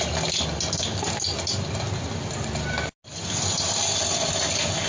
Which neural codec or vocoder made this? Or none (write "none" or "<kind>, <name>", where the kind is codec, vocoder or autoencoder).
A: none